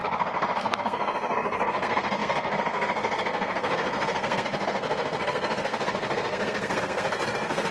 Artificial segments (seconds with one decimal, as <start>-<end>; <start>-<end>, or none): 0.0-7.7

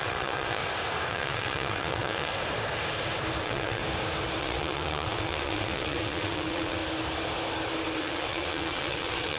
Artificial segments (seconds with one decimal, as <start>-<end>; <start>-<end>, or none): 0.0-0.6; 1.1-2.3; 3.4-3.8; 4.4-6.8; 8.0-9.4

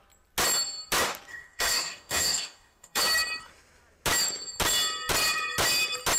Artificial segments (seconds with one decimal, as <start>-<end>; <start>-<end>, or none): 1.3-3.0

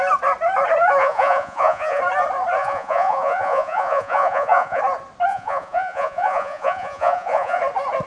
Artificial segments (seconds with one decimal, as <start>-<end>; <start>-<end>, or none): 1.0-2.0; 2.6-4.8; 5.3-7.6

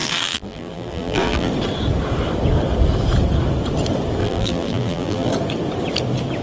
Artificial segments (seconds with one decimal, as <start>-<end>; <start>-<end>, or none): 0.0-1.5; 4.2-5.3

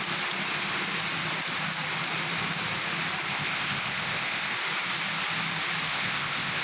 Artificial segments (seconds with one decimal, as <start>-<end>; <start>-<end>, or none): 3.3-4.5; 5.9-6.6